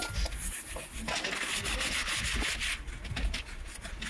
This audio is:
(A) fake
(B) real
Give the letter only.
B